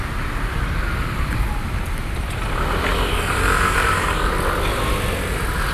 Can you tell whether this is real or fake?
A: real